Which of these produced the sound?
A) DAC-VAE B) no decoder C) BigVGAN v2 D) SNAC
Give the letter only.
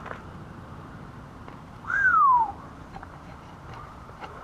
C